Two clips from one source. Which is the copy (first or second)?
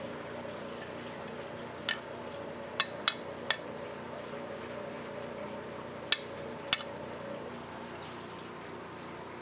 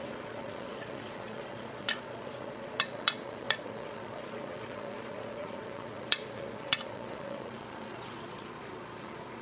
second